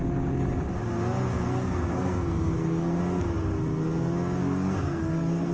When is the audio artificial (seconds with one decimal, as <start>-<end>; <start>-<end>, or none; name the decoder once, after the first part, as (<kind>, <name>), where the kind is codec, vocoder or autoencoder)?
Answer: 1.3-3.0 (codec, SNAC); 4.4-5.5